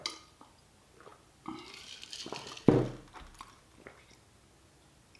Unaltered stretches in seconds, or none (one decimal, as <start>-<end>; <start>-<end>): 0.0-5.2